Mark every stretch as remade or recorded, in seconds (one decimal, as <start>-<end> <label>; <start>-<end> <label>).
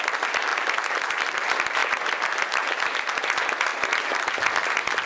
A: 0.0-5.1 recorded